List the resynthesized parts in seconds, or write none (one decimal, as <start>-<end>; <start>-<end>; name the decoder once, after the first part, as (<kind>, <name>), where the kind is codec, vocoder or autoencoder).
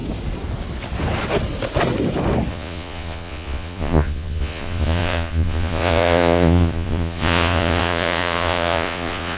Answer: 2.5-9.4 (vocoder, Vocos)